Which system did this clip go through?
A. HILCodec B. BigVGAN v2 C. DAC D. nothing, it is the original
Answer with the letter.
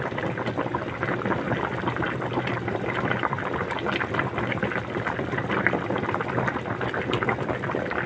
B